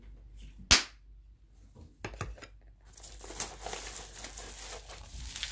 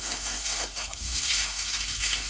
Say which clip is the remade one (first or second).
second